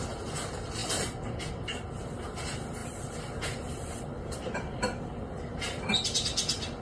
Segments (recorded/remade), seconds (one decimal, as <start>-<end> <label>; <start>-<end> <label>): 0.0-2.8 recorded; 2.8-5.1 remade; 5.1-6.8 recorded